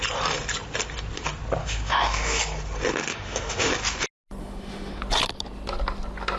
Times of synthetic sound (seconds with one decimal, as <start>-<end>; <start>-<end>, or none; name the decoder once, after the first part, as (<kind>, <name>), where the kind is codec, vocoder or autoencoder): 1.6-2.4 (autoencoder, DAC-VAE); 3.1-3.7; 4.4-5.0